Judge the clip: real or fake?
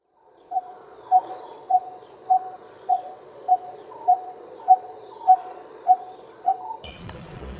fake